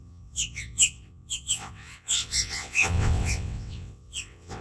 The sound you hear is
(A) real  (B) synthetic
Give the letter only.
B